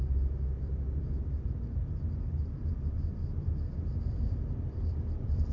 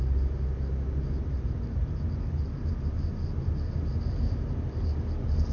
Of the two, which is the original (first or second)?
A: second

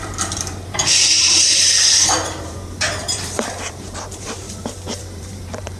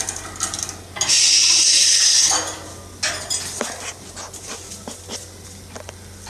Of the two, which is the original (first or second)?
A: second